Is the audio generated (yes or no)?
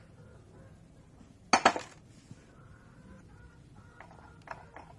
no